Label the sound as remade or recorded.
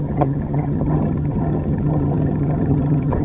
remade